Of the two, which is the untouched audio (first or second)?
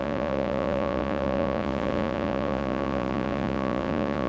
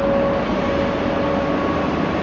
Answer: second